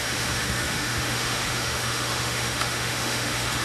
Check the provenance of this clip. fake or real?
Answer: fake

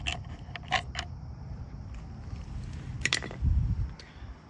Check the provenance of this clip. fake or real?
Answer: real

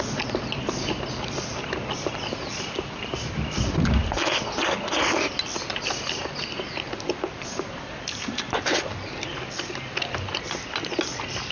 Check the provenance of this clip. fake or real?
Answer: real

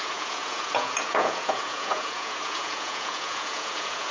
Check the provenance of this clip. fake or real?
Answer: fake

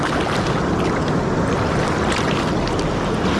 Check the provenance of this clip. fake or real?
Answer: real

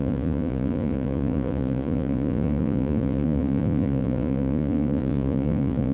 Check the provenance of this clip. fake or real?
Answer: fake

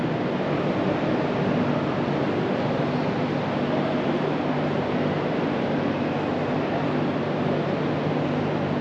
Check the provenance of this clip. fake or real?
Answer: real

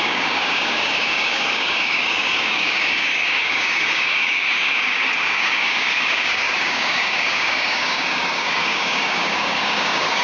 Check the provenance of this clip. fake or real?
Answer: fake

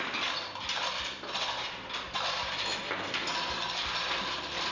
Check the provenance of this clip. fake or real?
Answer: real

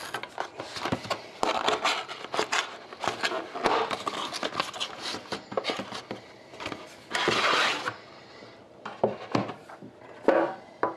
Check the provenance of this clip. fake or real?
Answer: real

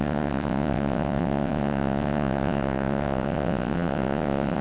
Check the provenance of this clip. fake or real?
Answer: fake